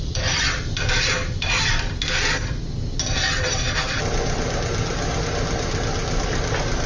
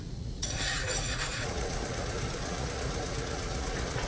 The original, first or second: first